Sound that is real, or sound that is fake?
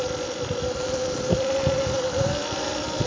real